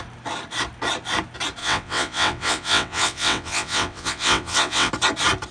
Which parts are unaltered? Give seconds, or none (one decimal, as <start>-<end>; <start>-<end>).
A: 0.0-1.6; 4.9-5.5